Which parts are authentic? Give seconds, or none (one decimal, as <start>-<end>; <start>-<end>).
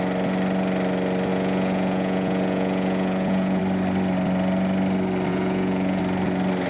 0.0-1.3; 3.6-5.3; 6.0-6.7